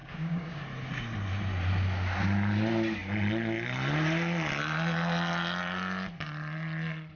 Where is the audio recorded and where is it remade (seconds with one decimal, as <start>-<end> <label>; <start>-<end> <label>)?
0.0-0.6 remade; 0.6-7.2 recorded

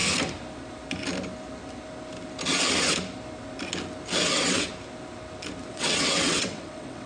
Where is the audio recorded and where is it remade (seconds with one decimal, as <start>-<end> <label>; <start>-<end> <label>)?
0.0-4.3 recorded; 4.3-4.7 remade; 4.7-5.7 recorded; 5.7-7.1 remade

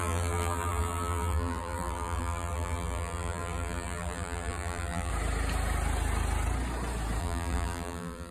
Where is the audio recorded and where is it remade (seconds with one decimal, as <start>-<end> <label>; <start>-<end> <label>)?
0.0-5.1 remade; 5.1-7.2 recorded; 7.2-8.3 remade

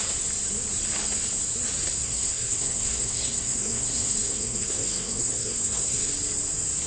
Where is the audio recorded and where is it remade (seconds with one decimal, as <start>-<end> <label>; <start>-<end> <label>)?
0.0-2.0 recorded; 2.0-6.1 remade; 6.1-6.9 recorded

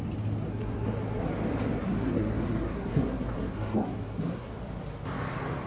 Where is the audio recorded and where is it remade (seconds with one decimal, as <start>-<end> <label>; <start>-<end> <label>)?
0.0-0.5 recorded; 0.5-1.3 remade; 1.3-1.8 recorded; 1.8-4.5 remade; 4.5-5.7 recorded

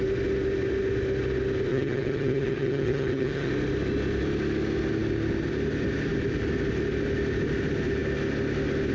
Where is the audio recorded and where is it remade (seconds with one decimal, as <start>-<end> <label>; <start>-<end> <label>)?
0.0-1.7 recorded; 1.7-3.5 remade; 3.5-8.9 recorded